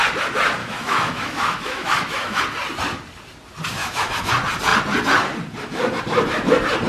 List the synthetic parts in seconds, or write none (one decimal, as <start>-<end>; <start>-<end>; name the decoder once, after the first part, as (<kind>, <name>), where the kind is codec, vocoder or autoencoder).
0.6-2.4 (autoencoder, DAC-VAE); 3.8-4.3